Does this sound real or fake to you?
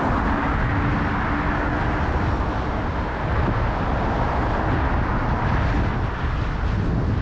real